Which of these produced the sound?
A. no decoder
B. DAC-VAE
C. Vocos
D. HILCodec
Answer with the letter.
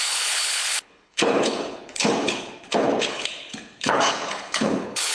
D